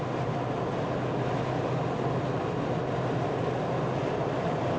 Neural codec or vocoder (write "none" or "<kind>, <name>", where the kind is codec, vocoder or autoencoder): none